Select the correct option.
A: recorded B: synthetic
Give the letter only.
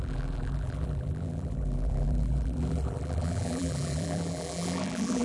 B